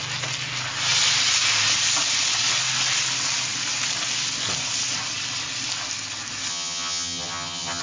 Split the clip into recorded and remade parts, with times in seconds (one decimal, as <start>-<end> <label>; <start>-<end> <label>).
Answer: 0.0-6.5 recorded; 6.5-7.8 remade